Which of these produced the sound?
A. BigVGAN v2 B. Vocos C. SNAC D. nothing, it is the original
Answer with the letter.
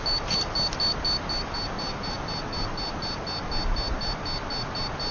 D